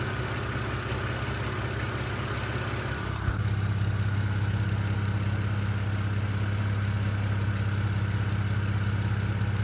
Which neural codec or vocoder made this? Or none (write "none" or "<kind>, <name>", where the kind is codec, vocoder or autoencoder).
none